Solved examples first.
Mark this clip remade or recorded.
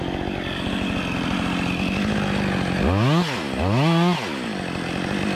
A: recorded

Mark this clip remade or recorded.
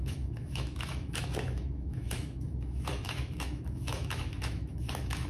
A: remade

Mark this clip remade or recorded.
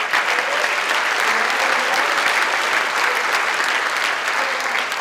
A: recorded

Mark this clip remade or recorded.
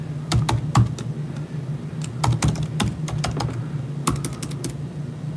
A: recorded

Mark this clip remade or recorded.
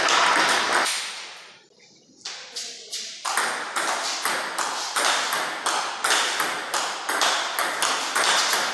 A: recorded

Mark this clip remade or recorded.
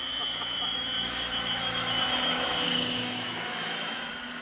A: remade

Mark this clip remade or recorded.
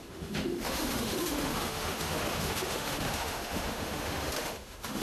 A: remade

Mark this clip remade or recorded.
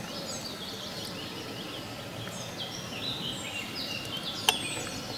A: recorded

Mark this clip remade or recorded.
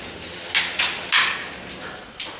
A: recorded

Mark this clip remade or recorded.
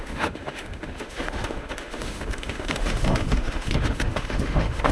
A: remade